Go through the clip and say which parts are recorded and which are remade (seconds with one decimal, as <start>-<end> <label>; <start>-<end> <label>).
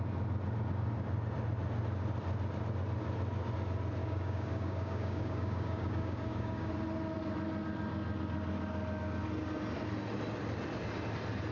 0.0-4.0 recorded; 4.0-6.7 remade; 6.7-11.5 recorded